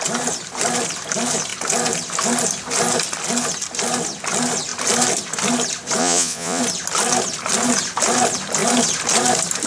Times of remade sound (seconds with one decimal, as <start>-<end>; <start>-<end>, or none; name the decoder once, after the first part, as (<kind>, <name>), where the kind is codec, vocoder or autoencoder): 6.0-6.6 (vocoder, Vocos)